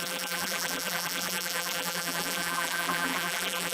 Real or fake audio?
fake